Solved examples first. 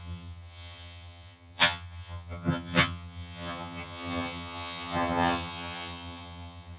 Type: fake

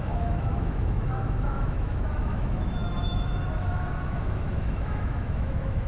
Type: fake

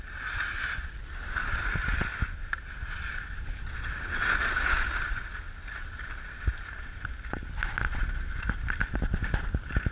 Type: real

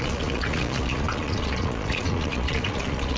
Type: fake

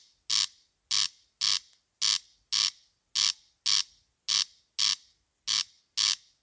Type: real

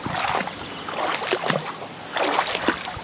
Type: real